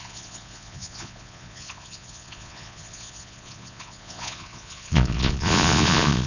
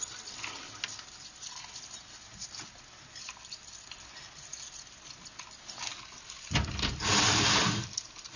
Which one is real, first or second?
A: second